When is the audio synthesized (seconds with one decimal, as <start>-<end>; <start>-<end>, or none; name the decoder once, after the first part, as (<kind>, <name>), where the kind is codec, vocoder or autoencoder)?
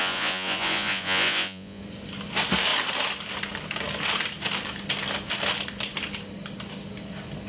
0.0-1.8 (vocoder, Vocos)